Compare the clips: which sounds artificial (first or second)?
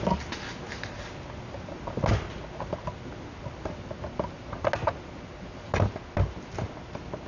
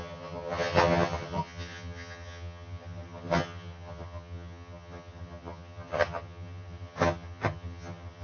second